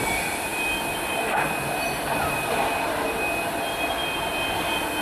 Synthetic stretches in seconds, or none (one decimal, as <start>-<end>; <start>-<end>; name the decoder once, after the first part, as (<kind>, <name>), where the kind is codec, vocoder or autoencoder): none

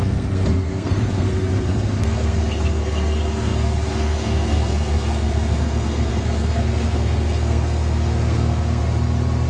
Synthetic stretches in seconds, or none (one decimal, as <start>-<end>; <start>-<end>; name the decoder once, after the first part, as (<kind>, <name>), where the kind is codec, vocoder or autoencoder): 0.0-8.8 (codec, SNAC)

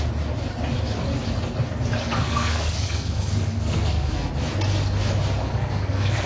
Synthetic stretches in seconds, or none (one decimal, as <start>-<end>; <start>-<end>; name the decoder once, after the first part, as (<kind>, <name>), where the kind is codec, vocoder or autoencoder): 2.0-4.3 (codec, SNAC); 5.4-6.3

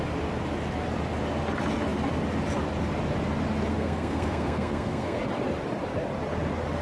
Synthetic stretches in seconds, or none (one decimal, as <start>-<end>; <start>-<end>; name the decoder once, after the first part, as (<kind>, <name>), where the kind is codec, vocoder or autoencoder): 3.7-5.2 (codec, SNAC)

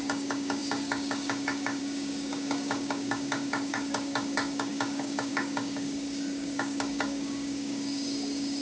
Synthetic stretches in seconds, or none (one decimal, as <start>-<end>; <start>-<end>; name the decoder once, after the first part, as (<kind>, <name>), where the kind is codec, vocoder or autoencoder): 0.0-8.6 (codec, DAC)

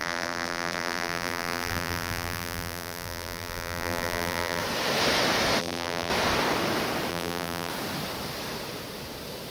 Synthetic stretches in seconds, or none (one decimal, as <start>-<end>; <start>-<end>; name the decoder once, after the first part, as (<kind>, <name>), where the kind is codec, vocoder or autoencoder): 0.0-4.6 (vocoder, BigVGAN v2); 5.6-6.1; 7.1-7.7

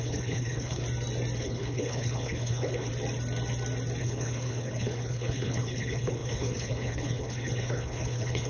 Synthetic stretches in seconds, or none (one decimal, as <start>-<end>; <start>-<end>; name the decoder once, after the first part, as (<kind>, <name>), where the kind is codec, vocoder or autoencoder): 0.0-0.8 (codec, HILCodec); 1.4-2.9; 4.0-8.5